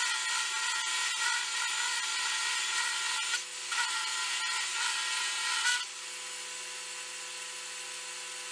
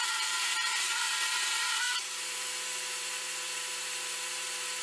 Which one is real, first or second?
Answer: first